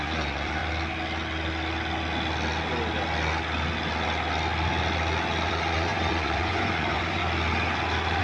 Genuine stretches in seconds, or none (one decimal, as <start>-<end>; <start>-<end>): 0.6-5.5; 7.2-8.2